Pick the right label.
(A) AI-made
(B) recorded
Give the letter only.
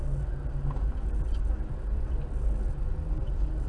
B